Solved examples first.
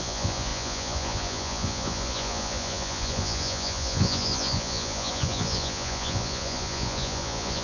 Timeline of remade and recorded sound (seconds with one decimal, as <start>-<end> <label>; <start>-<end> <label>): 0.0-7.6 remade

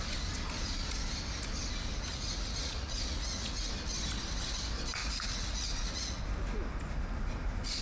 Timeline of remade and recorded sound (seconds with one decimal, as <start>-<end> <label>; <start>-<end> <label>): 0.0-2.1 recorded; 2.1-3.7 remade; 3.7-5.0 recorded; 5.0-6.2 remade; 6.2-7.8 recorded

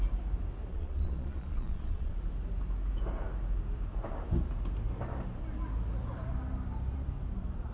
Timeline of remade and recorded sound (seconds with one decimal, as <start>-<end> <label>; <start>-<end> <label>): 0.0-0.7 recorded; 0.7-2.1 remade; 2.1-7.7 recorded